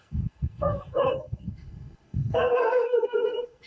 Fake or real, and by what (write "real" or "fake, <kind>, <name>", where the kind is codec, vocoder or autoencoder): fake, codec, SNAC